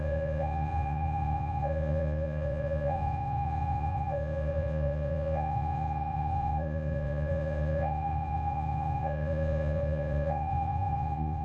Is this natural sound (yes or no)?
no